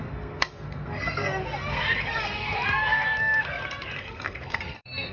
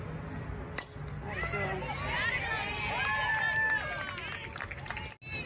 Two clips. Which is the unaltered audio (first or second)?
second